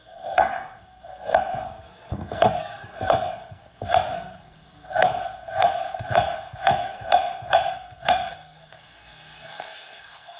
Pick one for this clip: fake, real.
fake